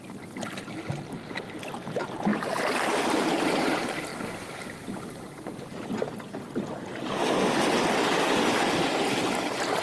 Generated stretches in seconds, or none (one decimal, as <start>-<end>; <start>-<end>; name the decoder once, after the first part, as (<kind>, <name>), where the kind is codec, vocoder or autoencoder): none